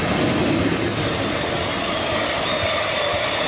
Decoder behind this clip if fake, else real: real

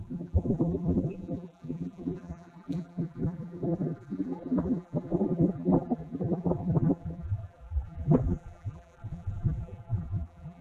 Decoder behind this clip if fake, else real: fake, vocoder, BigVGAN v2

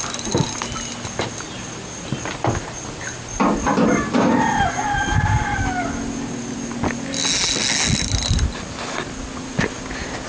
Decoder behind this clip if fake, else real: real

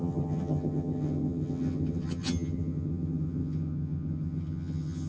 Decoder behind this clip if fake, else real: fake, vocoder, HiFi-GAN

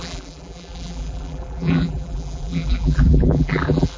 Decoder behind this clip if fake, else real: fake, vocoder, BigVGAN v2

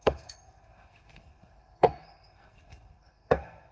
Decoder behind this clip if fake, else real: fake, codec, SNAC